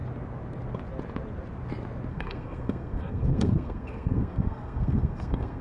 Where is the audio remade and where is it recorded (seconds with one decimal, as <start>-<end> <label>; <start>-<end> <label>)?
0.0-2.1 recorded; 2.1-5.6 remade